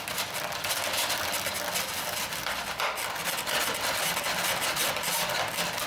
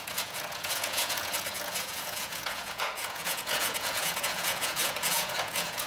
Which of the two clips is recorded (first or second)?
first